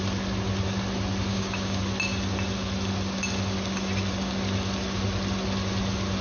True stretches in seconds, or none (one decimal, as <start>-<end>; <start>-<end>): 0.0-1.3; 1.8-6.2